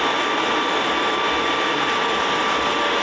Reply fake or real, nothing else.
real